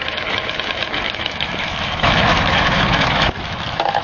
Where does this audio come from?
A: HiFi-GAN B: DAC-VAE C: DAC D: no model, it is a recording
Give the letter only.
B